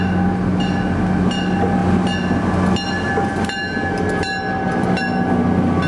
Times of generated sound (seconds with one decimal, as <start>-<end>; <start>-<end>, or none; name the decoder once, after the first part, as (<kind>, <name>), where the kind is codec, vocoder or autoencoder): none